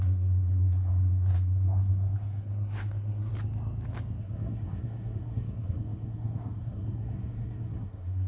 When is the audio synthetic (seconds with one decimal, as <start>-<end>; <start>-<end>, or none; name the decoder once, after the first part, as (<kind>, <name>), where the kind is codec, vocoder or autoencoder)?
0.0-3.3 (codec, SNAC); 4.2-8.3